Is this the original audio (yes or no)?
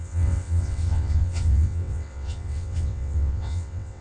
no